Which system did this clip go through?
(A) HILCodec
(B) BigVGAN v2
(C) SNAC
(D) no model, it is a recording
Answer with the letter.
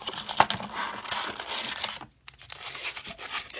D